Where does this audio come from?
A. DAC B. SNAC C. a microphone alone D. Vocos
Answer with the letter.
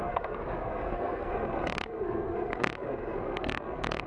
B